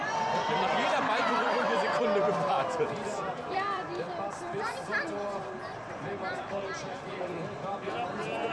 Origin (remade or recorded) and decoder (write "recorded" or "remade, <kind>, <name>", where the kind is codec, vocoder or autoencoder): remade, vocoder, BigVGAN v2